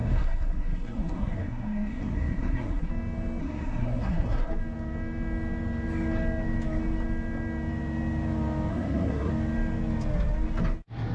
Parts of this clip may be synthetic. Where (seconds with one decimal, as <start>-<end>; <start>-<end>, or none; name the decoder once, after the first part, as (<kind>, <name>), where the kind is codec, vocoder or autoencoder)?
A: 0.0-2.9 (codec, SNAC); 3.4-4.5; 8.7-9.3